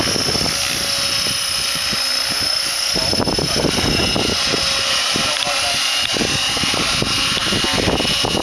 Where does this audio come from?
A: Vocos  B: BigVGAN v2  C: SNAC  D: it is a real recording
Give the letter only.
D